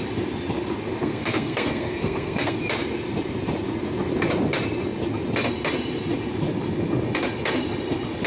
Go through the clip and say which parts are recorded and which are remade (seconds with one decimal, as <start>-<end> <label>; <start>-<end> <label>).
0.0-1.0 recorded; 1.0-2.6 remade; 2.6-8.3 recorded